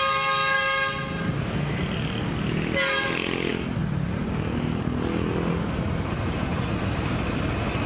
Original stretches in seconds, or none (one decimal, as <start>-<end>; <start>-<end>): 0.0-7.9